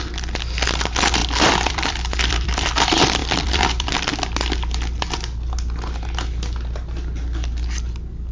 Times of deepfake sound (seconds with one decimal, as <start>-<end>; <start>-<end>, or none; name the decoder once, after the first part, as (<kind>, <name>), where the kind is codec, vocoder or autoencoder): 1.2-2.7 (vocoder, BigVGAN v2); 3.2-3.9

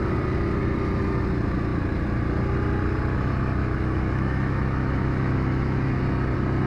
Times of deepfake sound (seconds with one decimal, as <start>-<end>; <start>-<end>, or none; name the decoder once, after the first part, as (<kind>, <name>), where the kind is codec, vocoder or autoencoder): 3.6-6.0 (autoencoder, DAC-VAE)

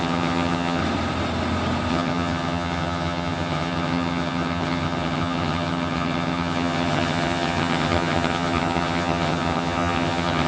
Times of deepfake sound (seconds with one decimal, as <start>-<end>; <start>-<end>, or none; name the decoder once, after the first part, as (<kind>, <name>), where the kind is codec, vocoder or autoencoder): 0.0-0.8 (vocoder, HiFi-GAN); 1.9-10.5

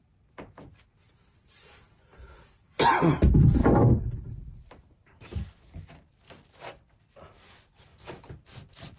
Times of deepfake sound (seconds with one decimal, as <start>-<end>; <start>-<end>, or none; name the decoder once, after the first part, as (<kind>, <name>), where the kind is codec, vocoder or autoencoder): 3.6-4.9 (vocoder, BigVGAN v2)

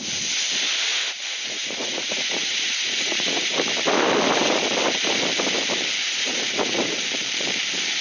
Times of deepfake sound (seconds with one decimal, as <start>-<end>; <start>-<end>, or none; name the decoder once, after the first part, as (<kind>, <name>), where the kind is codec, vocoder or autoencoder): 0.9-3.7 (vocoder, Vocos); 6.0-7.0